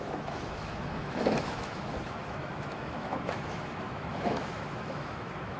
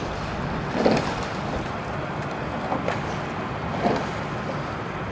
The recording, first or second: second